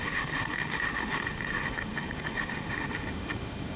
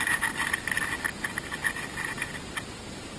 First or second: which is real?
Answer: second